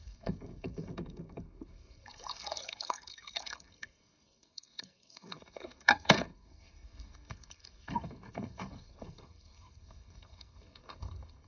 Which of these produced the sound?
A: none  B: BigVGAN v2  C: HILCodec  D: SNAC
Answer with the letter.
D